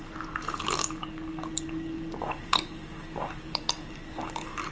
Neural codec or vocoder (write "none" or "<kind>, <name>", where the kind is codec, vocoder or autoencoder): codec, DAC